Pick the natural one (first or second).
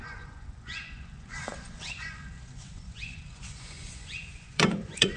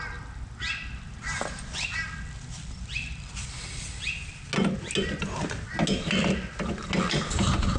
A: second